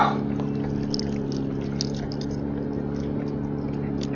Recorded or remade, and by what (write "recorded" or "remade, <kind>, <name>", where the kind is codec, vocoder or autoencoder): recorded